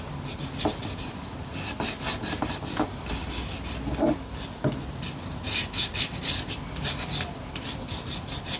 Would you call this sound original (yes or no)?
yes